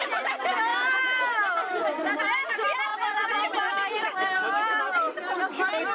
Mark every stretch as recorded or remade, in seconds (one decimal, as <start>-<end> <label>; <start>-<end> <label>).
0.0-5.9 recorded